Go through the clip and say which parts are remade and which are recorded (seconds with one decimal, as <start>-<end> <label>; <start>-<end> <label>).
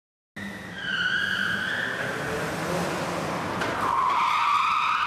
0.0-5.1 recorded